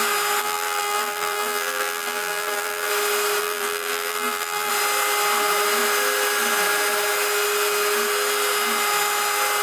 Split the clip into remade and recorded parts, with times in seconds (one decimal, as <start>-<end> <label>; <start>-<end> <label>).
0.0-0.4 recorded; 0.4-2.9 remade; 2.9-3.4 recorded; 3.4-4.7 remade; 4.7-9.6 recorded